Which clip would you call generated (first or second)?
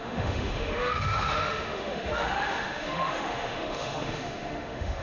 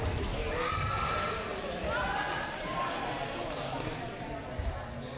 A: first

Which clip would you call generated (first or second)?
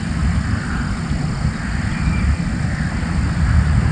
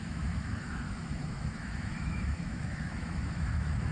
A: second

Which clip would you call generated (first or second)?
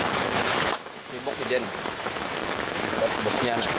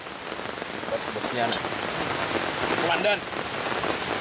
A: first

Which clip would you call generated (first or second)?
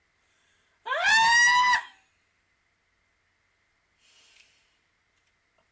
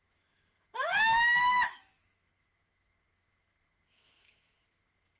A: second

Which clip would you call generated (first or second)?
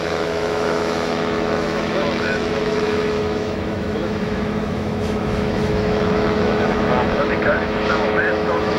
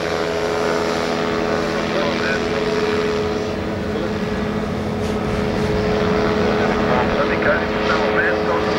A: first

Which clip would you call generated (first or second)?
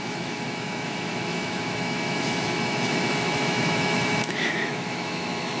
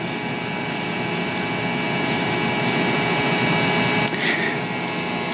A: first